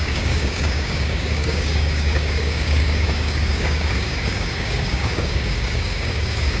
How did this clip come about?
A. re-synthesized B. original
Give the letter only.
A